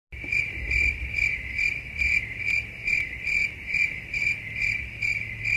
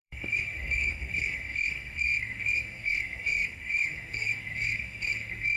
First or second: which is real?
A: first